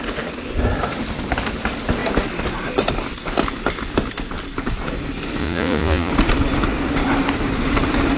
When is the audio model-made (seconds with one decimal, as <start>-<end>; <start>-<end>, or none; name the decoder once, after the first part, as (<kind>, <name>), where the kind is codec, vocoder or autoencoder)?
5.4-6.1 (vocoder, Vocos)